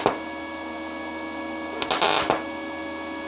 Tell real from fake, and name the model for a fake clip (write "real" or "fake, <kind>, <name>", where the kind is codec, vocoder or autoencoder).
real